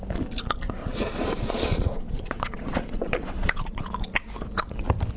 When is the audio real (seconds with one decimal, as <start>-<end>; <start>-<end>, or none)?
0.0-0.8; 3.9-5.2